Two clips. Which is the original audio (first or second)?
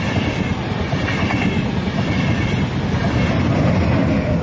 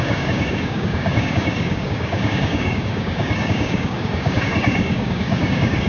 first